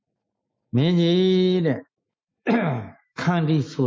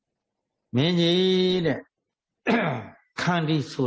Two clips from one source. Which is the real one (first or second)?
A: second